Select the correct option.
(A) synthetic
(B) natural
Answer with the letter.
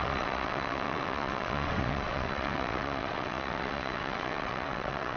A